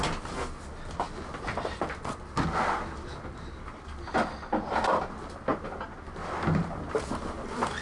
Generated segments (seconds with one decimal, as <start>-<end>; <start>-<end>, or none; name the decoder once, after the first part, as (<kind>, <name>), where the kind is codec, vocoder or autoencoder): none